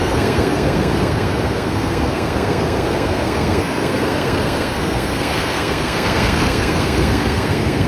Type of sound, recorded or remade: remade